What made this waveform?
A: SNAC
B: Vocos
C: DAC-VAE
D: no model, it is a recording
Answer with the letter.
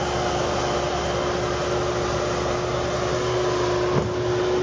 D